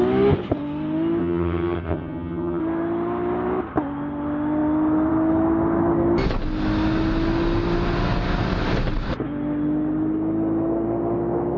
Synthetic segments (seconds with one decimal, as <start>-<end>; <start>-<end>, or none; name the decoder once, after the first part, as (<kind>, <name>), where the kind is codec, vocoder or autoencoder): 1.2-2.6 (vocoder, HiFi-GAN)